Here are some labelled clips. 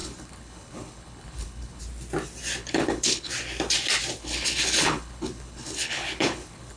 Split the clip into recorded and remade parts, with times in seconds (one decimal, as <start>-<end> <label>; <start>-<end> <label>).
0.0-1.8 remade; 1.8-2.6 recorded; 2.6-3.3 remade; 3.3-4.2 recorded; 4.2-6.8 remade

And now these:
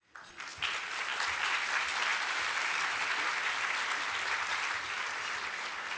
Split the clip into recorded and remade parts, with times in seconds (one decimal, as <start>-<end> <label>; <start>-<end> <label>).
0.0-6.0 recorded

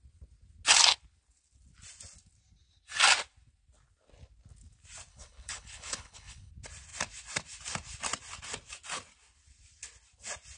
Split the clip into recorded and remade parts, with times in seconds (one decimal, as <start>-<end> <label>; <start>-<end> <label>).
0.0-5.1 recorded; 5.1-6.5 remade; 6.5-10.6 recorded

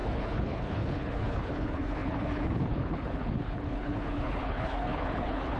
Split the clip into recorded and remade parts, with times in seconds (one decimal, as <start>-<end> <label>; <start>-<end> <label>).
0.0-5.6 remade

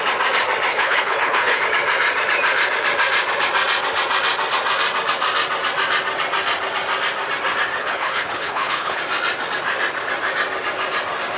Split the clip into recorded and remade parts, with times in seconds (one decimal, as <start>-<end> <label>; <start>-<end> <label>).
0.0-0.7 recorded; 0.7-1.6 remade; 1.6-7.8 recorded; 7.8-9.0 remade; 9.0-11.4 recorded